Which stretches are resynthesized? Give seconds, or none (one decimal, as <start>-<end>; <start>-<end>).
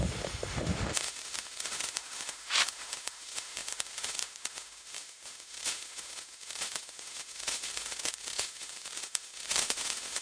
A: 0.0-10.2